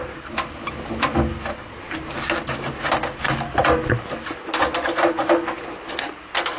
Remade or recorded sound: recorded